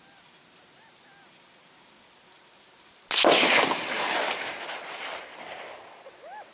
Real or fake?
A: real